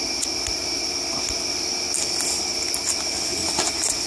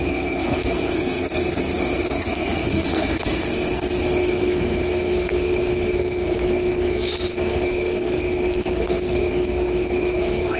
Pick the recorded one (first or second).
first